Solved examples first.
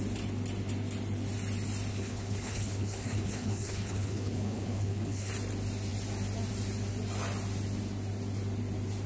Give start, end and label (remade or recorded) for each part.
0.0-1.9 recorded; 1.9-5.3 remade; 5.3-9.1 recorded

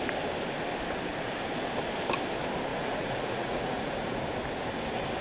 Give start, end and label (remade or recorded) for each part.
0.0-2.7 recorded; 2.7-4.2 remade; 4.2-5.2 recorded

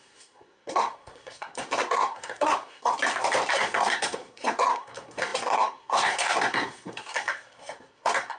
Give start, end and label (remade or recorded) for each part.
0.0-2.9 remade; 2.9-3.5 recorded; 3.5-8.4 remade

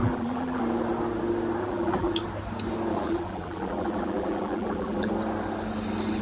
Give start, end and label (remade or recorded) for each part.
0.0-0.6 remade; 0.6-1.6 recorded; 1.6-2.1 remade; 2.1-2.9 recorded; 2.9-5.1 remade; 5.1-6.2 recorded

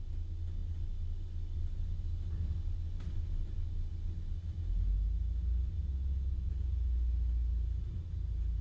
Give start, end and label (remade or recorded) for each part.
0.0-8.6 recorded

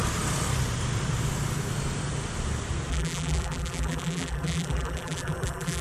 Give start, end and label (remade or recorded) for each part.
0.0-2.9 recorded; 2.9-5.8 remade

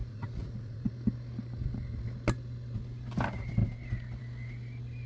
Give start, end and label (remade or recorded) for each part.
0.0-0.9 remade; 0.9-5.1 recorded